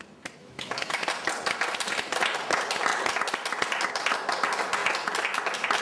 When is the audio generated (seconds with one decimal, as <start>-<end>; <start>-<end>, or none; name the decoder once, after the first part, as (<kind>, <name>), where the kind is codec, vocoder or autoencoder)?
0.4-1.0 (autoencoder, DAC-VAE)